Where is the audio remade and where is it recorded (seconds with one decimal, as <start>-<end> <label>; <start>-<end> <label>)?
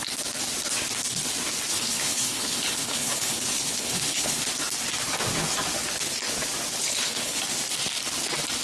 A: 0.0-1.7 recorded; 1.7-4.4 remade; 4.4-6.8 recorded; 6.8-7.4 remade; 7.4-8.6 recorded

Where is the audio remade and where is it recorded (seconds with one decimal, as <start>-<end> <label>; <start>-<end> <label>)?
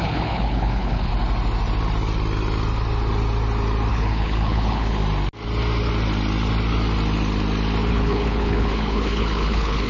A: 0.0-1.1 remade; 1.1-3.9 recorded; 3.9-5.0 remade; 5.0-7.9 recorded; 7.9-9.9 remade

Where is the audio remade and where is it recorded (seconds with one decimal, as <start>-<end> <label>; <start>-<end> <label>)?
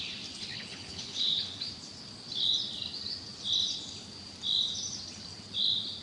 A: 0.0-0.5 recorded; 0.5-1.6 remade; 1.6-6.0 recorded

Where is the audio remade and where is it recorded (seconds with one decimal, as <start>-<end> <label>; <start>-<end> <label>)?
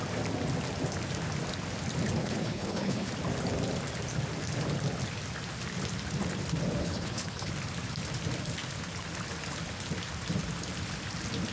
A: 0.0-2.2 recorded; 2.2-3.1 remade; 3.1-6.8 recorded; 6.8-7.5 remade; 7.5-11.5 recorded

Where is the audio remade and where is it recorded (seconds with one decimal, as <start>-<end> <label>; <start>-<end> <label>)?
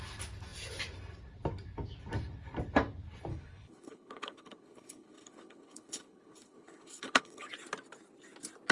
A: 0.0-3.3 recorded; 3.3-7.5 remade; 7.5-8.7 recorded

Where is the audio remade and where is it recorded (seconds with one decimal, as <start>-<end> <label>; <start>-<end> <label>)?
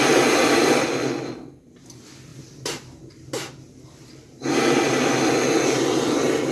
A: 0.0-6.5 recorded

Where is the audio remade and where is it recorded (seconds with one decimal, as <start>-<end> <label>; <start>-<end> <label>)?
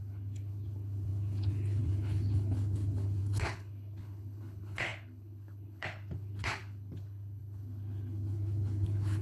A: 0.0-9.2 remade